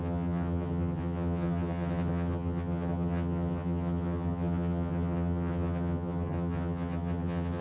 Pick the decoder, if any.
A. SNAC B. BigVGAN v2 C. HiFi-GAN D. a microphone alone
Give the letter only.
C